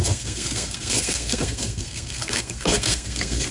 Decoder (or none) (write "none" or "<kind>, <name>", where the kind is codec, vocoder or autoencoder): codec, SNAC